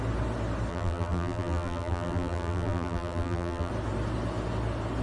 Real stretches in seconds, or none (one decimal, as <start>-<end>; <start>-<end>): 0.0-0.7; 3.7-5.0